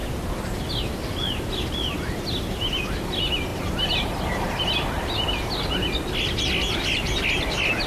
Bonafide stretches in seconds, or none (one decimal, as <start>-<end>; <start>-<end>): 0.0-7.9